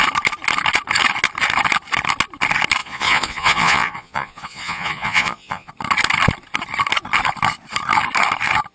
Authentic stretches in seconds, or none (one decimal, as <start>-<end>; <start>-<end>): 0.0-2.8; 5.7-8.7